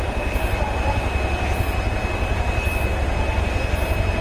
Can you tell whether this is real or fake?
real